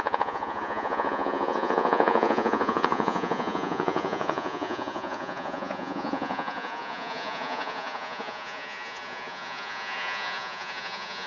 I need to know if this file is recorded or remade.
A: remade